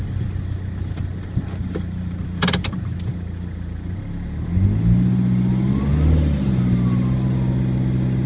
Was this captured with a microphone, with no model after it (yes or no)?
yes